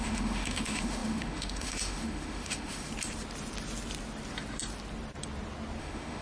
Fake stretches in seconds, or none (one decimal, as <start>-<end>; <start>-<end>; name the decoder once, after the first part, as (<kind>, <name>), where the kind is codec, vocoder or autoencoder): 0.0-2.9 (autoencoder, DAC-VAE); 5.8-6.2